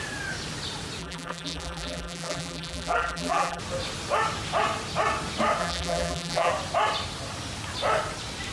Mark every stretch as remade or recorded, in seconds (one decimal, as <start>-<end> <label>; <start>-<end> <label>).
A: 0.0-1.0 recorded; 1.0-3.6 remade; 3.6-5.6 recorded; 5.6-6.5 remade; 6.5-8.5 recorded